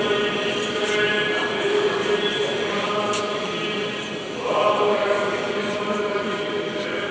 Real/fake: real